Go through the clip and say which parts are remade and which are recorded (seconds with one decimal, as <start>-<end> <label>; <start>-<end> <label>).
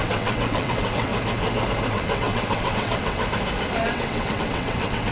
0.0-1.1 remade; 1.1-1.9 recorded; 1.9-3.2 remade; 3.2-3.8 recorded; 3.8-5.1 remade